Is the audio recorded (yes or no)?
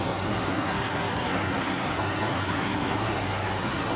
no